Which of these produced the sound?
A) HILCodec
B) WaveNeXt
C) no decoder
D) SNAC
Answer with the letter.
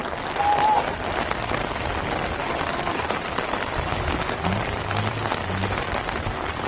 C